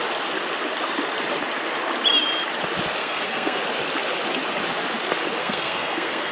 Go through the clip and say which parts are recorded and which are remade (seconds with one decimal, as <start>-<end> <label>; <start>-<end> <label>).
0.0-3.0 recorded; 3.0-3.6 remade; 3.6-5.4 recorded; 5.4-6.3 remade